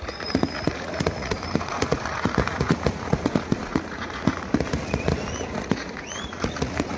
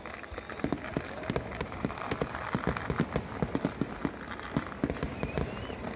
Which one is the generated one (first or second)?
first